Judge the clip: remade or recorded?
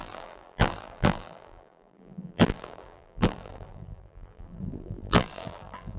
remade